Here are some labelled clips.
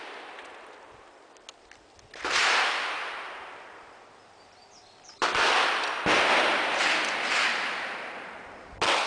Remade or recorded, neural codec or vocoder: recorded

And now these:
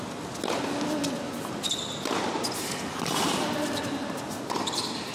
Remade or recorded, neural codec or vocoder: recorded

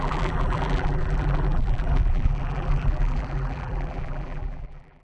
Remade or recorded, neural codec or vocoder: remade, vocoder, BigVGAN v2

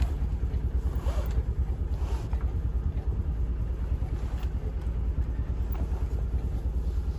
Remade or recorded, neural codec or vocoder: recorded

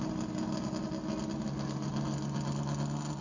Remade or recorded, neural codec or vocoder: recorded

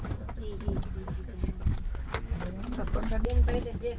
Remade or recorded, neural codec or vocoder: recorded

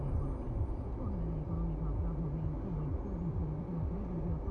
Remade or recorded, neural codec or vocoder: recorded